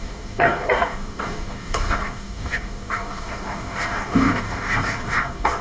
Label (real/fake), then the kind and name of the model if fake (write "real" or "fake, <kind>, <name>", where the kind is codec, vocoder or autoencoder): fake, codec, DAC